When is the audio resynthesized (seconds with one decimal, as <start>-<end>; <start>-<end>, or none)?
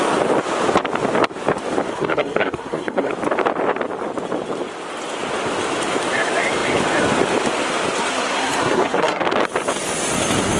1.9-3.1; 8.1-9.2